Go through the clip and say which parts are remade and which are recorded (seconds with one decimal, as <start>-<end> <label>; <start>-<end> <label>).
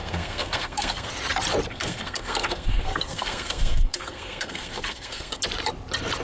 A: 0.0-1.1 remade; 1.1-1.7 recorded; 1.7-5.4 remade; 5.4-6.2 recorded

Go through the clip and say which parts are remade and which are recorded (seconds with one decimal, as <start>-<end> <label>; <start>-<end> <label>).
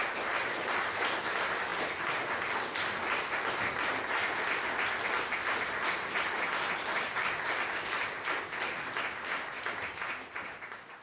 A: 0.0-11.0 recorded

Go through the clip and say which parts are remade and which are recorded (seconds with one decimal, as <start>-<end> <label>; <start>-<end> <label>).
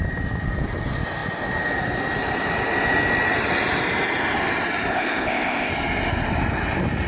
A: 0.0-4.9 recorded; 4.9-5.7 remade; 5.7-7.1 recorded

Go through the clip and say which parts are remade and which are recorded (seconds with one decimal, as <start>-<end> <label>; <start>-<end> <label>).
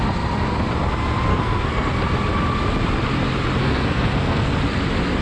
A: 0.0-1.3 recorded; 1.3-1.9 remade; 1.9-3.6 recorded; 3.6-4.5 remade; 4.5-5.2 recorded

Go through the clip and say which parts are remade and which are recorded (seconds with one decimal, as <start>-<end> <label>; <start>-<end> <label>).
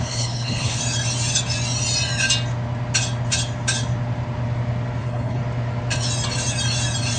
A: 0.0-0.8 remade; 0.8-5.0 recorded; 5.0-5.4 remade; 5.4-7.2 recorded